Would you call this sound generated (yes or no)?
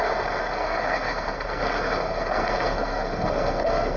yes